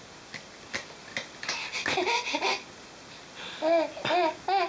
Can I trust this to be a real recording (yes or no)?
yes